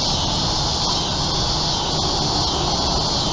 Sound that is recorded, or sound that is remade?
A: recorded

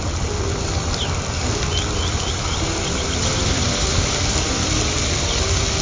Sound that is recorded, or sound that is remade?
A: recorded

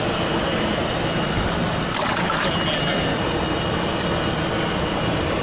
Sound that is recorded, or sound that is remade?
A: recorded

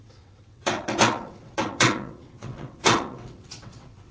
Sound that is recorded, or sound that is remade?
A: remade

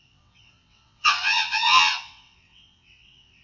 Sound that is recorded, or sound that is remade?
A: remade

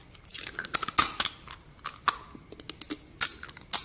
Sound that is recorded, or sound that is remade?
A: recorded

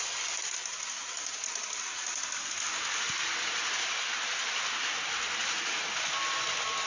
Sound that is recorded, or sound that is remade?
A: recorded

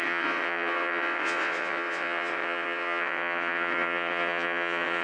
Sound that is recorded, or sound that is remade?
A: remade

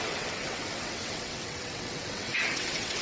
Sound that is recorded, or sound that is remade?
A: remade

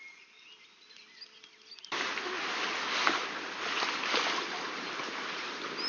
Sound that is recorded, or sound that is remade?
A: recorded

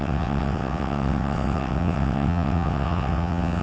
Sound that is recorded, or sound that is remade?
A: remade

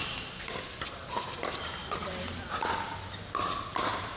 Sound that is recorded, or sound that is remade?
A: recorded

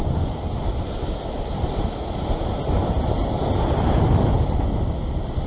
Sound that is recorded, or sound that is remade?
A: recorded